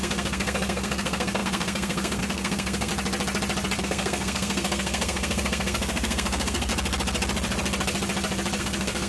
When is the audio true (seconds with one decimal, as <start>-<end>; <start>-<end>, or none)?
2.9-3.8; 6.7-8.6